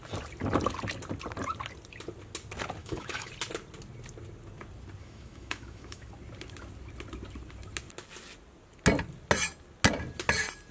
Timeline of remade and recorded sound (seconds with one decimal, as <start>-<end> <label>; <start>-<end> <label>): 0.0-2.8 recorded; 2.8-3.3 remade; 3.3-5.0 recorded; 5.0-6.1 remade; 6.1-10.7 recorded